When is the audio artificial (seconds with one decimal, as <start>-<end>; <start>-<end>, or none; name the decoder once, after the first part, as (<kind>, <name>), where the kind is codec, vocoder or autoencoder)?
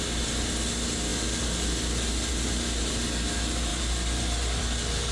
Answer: none